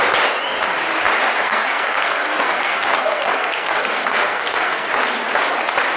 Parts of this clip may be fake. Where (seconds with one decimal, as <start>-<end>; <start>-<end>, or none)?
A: 1.3-4.9